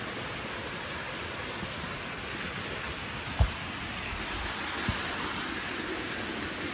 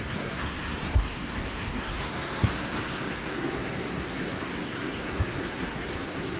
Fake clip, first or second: second